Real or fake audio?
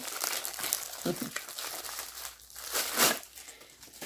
real